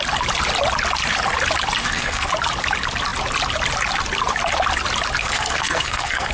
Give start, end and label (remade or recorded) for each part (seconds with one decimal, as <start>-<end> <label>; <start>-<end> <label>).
0.0-1.8 recorded; 1.8-2.3 remade; 2.3-5.2 recorded; 5.2-6.3 remade